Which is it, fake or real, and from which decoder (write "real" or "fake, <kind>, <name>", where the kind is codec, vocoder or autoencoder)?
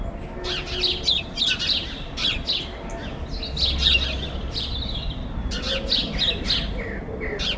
real